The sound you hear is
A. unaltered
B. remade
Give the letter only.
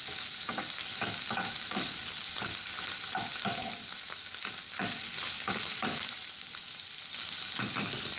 A